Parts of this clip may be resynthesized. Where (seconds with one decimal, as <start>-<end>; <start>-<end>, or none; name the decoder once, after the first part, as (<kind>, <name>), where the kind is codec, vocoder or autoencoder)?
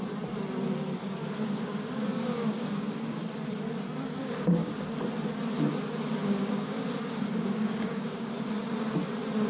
1.0-3.3 (codec, DAC); 4.2-4.9; 6.2-8.4